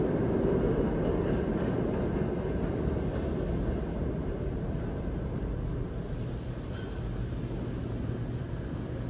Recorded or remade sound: recorded